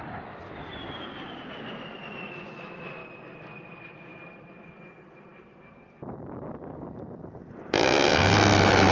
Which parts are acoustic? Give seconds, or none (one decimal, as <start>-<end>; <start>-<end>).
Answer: 0.0-8.9